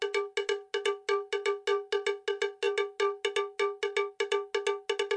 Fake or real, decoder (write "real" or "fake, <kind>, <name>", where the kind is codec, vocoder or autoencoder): real